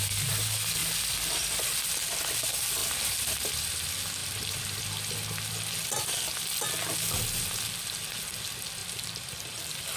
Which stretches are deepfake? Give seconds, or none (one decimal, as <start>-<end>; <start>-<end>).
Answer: 2.8-3.6; 4.2-4.8; 8.8-10.0